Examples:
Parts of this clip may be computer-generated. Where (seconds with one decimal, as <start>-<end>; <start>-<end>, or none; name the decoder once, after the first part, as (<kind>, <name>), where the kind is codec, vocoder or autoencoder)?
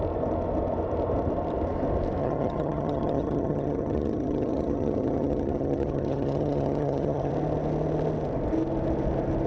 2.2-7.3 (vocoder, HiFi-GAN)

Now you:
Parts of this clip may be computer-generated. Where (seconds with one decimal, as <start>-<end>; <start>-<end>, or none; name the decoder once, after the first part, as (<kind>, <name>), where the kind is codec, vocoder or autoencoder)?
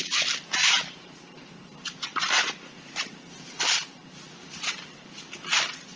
0.0-6.0 (vocoder, BigVGAN v2)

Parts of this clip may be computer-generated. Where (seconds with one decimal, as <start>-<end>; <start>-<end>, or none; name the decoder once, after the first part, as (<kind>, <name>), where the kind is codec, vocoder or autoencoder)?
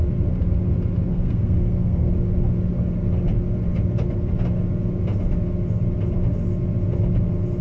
1.1-2.1 (codec, SNAC)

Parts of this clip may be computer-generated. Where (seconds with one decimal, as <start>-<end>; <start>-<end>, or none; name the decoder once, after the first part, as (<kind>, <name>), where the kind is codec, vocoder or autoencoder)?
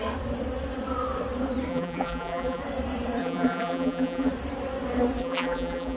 1.7-2.6 (vocoder, BigVGAN v2); 3.2-4.3; 5.2-6.0